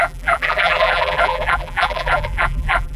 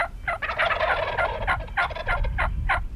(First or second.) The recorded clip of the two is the second